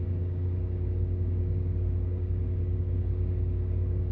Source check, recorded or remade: remade